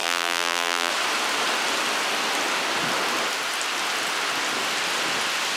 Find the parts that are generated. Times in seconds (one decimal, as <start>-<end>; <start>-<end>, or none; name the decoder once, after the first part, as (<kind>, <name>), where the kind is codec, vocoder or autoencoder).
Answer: 0.0-0.9 (vocoder, BigVGAN v2)